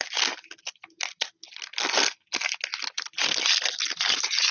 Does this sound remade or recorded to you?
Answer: recorded